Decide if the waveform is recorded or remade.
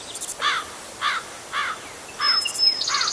recorded